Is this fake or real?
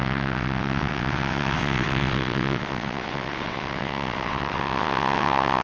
fake